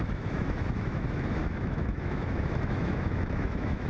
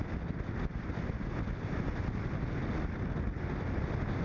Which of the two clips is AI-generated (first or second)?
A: first